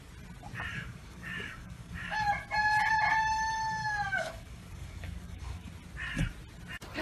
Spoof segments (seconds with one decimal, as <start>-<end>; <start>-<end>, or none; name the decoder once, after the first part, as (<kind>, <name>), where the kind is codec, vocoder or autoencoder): 0.7-2.3 (codec, DAC); 3.8-5.7